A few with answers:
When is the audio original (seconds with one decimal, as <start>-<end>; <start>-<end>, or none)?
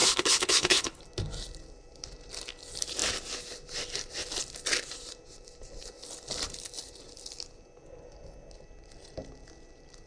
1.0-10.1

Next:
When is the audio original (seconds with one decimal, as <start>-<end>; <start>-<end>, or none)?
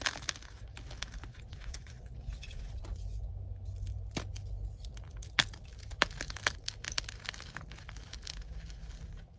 0.0-1.3; 3.3-9.4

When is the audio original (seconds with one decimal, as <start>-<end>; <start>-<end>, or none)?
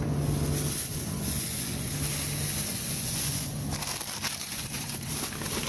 0.0-0.8; 1.9-2.7; 3.6-4.4; 5.1-5.7